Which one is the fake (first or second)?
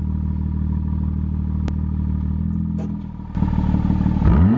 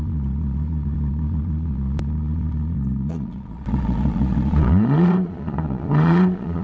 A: second